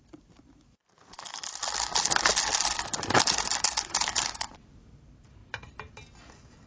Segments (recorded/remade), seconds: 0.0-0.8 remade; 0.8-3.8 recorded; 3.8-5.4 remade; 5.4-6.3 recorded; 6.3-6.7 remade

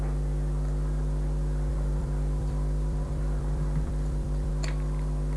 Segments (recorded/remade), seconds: 0.0-1.7 recorded; 1.7-4.5 remade; 4.5-5.4 recorded

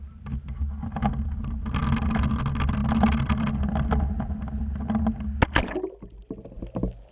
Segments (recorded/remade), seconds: 0.0-7.1 recorded

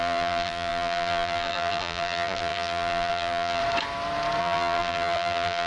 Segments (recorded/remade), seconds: 0.0-3.6 remade; 3.6-4.4 recorded; 4.4-5.7 remade

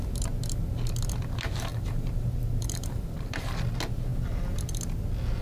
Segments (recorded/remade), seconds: 0.0-1.7 recorded; 1.7-3.4 remade; 3.4-4.1 recorded; 4.1-4.7 remade; 4.7-5.4 recorded

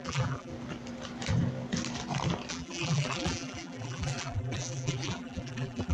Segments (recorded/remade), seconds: 0.0-0.5 remade; 0.5-2.5 recorded; 2.5-5.9 remade